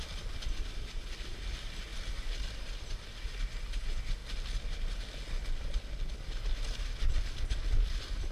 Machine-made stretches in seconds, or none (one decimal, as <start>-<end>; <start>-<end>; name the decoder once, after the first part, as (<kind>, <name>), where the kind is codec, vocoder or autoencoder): none